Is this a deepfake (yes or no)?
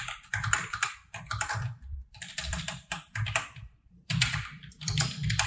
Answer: yes